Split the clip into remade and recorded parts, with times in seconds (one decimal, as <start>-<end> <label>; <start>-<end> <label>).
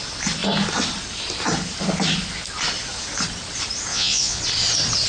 0.0-3.9 recorded; 3.9-4.4 remade; 4.4-5.1 recorded